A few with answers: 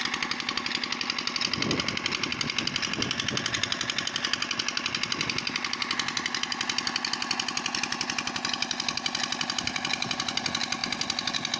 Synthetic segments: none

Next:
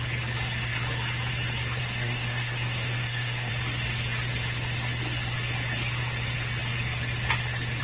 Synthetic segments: 1.8-3.5 (codec, SNAC)

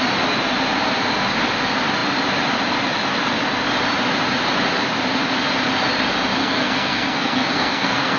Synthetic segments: 6.4-8.2 (codec, SNAC)

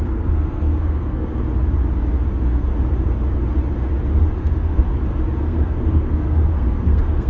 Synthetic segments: 0.0-1.4 (codec, SNAC); 2.3-2.7; 4.4-4.9; 5.4-7.3